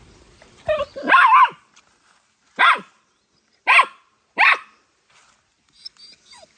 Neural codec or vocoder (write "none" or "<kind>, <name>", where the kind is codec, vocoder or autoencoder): none